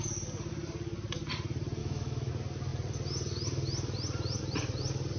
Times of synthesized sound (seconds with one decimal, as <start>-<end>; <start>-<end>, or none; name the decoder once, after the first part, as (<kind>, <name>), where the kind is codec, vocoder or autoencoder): 1.8-2.3 (autoencoder, DAC-VAE)